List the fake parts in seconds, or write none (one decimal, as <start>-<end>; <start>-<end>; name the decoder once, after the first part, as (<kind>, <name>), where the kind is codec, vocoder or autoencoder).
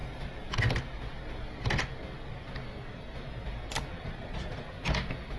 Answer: 3.9-4.7 (vocoder, Vocos)